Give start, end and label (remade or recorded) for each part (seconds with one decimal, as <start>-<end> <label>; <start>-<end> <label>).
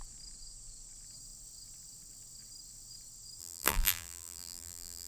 0.0-3.4 recorded; 3.4-5.1 remade